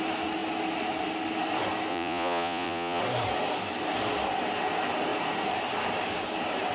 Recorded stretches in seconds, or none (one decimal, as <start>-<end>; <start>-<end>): 0.0-1.9; 3.0-6.7